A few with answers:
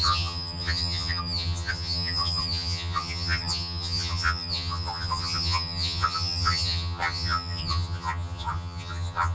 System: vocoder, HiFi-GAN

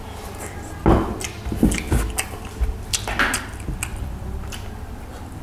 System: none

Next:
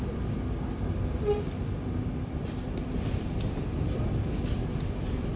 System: vocoder, BigVGAN v2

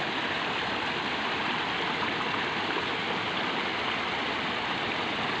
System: none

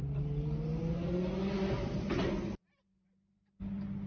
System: none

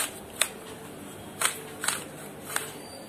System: none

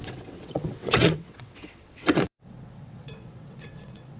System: vocoder, WaveNeXt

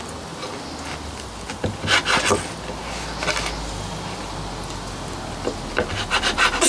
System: none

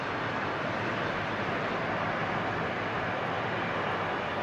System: none